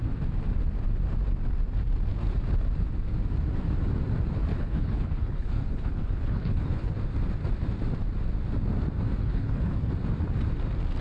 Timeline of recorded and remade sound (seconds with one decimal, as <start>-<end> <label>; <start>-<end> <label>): 0.0-4.5 recorded; 4.5-7.0 remade; 7.0-9.2 recorded; 9.2-9.9 remade; 9.9-11.0 recorded